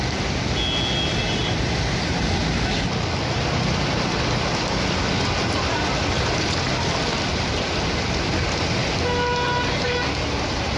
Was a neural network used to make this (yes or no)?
no